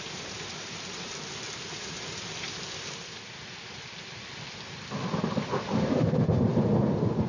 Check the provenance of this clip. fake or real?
real